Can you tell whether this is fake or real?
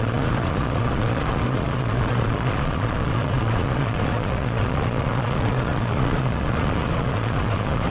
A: fake